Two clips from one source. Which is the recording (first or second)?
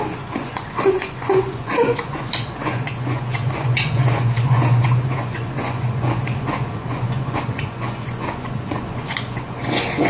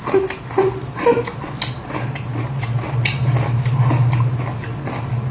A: second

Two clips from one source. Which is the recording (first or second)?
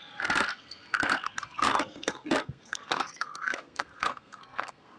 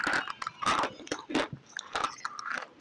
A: second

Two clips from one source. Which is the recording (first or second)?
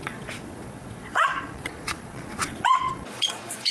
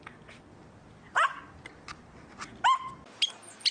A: second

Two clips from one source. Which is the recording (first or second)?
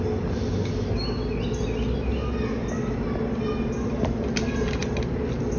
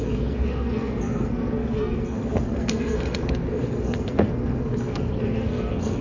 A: first